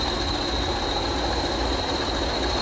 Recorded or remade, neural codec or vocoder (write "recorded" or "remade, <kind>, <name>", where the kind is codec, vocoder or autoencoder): recorded